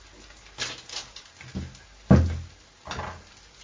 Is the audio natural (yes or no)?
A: yes